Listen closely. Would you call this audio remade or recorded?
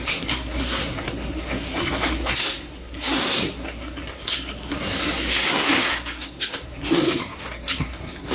remade